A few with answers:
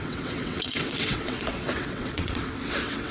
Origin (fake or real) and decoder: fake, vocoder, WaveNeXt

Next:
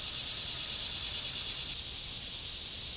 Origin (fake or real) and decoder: real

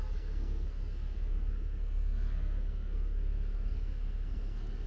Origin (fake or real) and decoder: fake, codec, SNAC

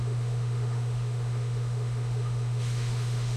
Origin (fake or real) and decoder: fake, autoencoder, DAC-VAE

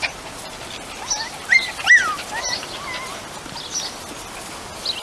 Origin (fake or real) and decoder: real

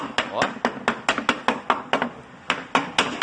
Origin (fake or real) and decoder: real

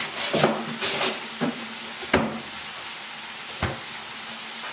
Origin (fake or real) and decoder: real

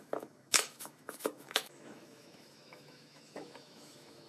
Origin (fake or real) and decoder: fake, autoencoder, DAC-VAE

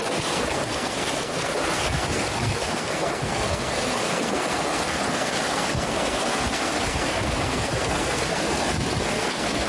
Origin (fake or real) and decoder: fake, codec, SNAC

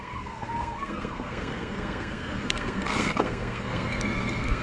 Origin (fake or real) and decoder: fake, codec, SNAC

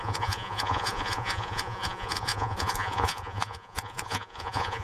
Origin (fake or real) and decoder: fake, vocoder, Vocos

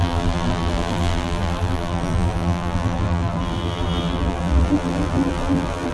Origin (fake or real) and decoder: fake, vocoder, BigVGAN v2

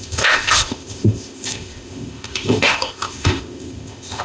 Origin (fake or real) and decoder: fake, codec, ZipCodec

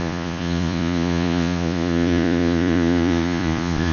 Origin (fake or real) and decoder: fake, vocoder, Vocos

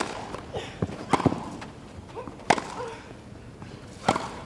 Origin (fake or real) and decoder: real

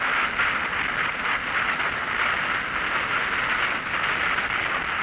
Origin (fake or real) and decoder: real